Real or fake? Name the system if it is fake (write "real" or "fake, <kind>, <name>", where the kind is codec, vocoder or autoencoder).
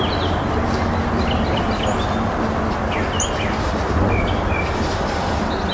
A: real